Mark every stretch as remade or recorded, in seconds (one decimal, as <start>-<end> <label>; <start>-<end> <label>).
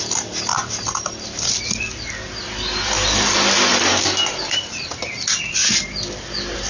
0.0-0.5 recorded; 0.5-1.5 remade; 1.5-6.7 recorded